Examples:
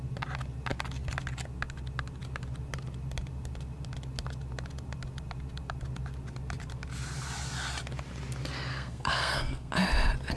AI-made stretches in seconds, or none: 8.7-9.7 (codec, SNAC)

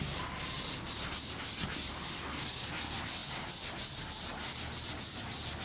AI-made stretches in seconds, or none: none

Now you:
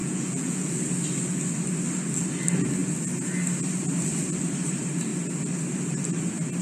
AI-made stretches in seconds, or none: 0.0-0.7 (vocoder, Vocos)

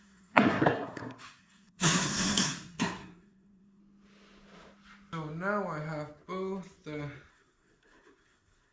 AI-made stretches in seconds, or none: 0.0-3.8 (codec, SNAC); 7.3-8.7